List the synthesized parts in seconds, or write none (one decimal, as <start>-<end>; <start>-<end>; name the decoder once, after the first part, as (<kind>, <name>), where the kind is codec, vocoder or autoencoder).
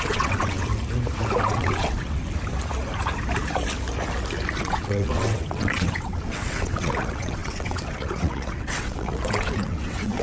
0.0-0.7 (vocoder, WaveNeXt); 1.4-2.2; 4.5-10.2